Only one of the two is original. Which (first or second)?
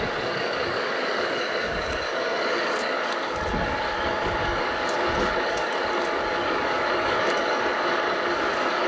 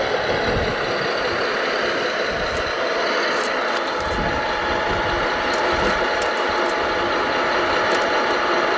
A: second